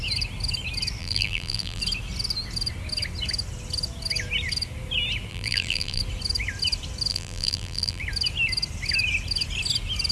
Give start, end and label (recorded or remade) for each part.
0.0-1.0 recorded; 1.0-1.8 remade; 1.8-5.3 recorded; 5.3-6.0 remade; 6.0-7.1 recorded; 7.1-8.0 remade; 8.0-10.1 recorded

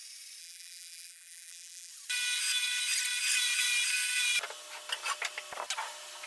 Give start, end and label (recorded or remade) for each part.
0.0-0.4 recorded; 0.4-1.9 remade; 1.9-6.3 recorded

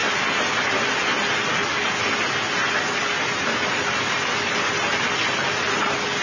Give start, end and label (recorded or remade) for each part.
0.0-6.2 recorded

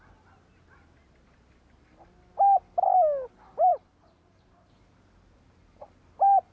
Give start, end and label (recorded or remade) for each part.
0.0-3.7 recorded; 3.7-4.7 remade; 4.7-6.5 recorded

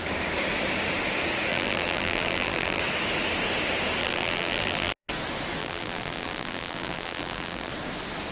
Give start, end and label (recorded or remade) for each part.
0.0-1.5 recorded; 1.5-2.8 remade; 2.8-4.0 recorded; 4.0-5.1 remade; 5.1-5.6 recorded; 5.6-7.7 remade; 7.7-8.3 recorded

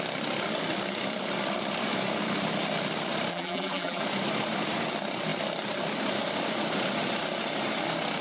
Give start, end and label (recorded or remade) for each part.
0.0-3.3 recorded; 3.3-4.0 remade; 4.0-8.2 recorded

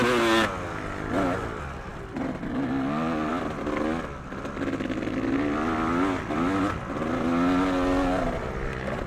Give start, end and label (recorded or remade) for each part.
0.0-1.9 recorded; 1.9-2.7 remade; 2.7-9.1 recorded